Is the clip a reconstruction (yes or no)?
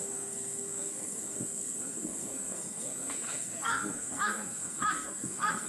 yes